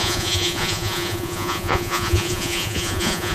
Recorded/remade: remade